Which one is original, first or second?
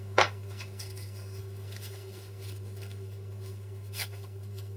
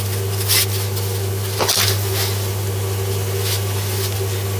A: second